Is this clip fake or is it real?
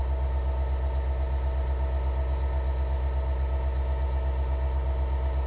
real